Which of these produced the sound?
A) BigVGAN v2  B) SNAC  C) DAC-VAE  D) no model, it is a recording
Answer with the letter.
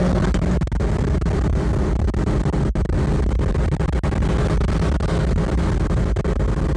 D